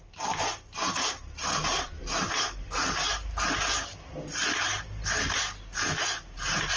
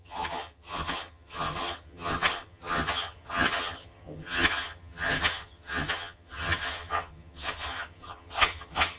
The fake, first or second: second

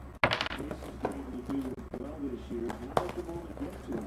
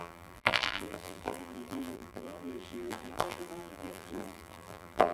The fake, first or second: second